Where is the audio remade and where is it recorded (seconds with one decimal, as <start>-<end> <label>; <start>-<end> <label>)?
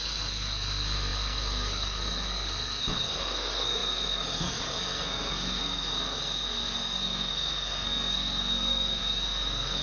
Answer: 0.0-9.8 remade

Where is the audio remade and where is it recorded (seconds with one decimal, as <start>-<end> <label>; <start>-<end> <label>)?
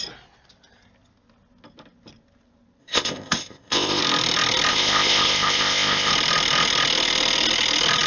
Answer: 0.0-2.8 recorded; 2.8-4.0 remade; 4.0-4.7 recorded; 4.7-6.1 remade; 6.1-8.1 recorded